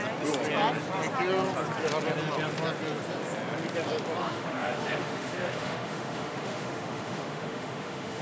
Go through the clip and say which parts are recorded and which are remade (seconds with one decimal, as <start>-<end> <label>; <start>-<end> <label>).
0.0-4.2 recorded; 4.2-8.2 remade